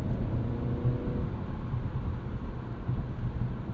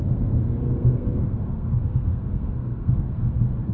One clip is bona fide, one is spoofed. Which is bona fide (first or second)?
first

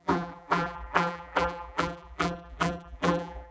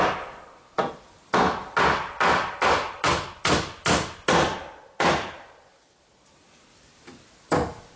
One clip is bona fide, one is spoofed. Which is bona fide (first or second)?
second